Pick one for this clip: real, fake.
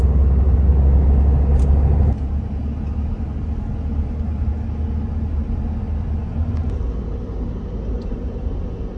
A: real